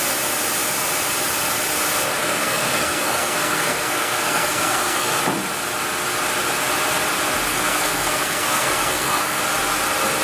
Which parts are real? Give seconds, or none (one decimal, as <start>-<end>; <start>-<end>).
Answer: 0.0-2.2; 5.2-7.5; 9.4-10.2